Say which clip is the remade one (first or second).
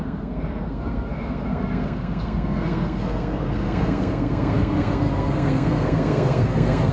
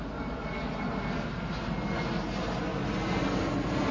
first